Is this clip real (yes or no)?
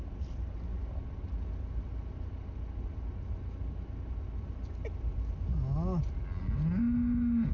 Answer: yes